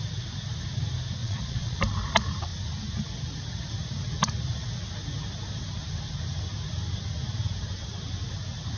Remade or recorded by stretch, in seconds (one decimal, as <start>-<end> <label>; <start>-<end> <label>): 0.0-1.2 recorded; 1.2-1.8 remade; 1.8-8.8 recorded